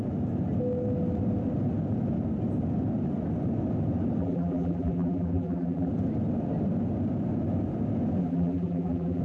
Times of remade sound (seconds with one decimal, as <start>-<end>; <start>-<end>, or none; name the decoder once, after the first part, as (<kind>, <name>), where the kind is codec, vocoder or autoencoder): 4.2-5.9 (vocoder, BigVGAN v2); 8.2-9.2